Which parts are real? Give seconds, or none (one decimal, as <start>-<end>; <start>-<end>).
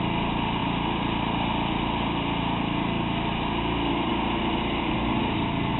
none